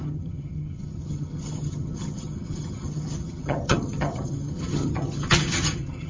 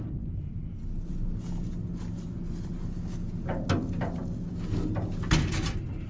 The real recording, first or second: second